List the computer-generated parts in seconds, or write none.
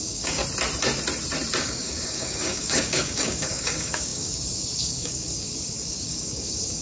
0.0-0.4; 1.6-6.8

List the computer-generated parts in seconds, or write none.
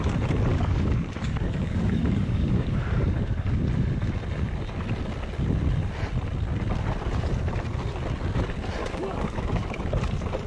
0.5-3.6; 8.8-9.8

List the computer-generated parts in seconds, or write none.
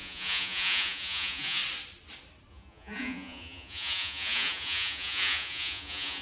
0.0-1.6; 2.5-6.2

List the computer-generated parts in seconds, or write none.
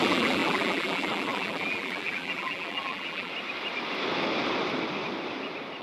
0.0-3.3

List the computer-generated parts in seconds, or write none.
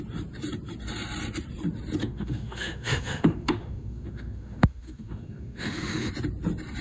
2.0-6.1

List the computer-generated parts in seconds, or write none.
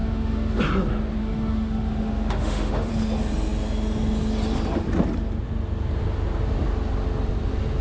0.0-0.6; 1.2-2.9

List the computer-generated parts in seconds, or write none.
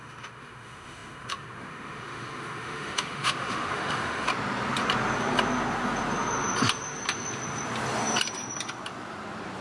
0.0-4.3